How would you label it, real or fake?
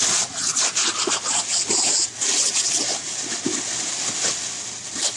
real